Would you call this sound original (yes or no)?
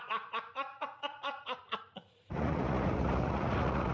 no